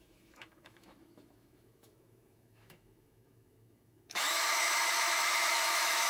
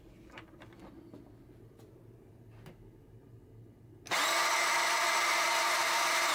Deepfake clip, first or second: first